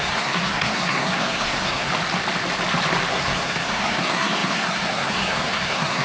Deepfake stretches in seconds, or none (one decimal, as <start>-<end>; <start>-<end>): 0.0-1.9; 3.1-6.0